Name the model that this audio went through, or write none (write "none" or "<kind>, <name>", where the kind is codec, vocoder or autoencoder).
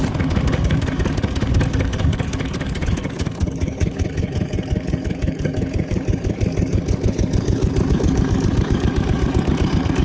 codec, DAC